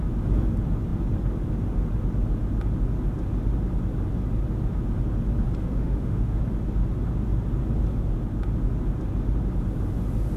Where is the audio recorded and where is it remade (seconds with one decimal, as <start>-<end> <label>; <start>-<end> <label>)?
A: 0.0-5.6 recorded; 5.6-6.4 remade; 6.4-10.4 recorded